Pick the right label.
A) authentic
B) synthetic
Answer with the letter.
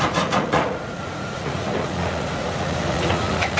B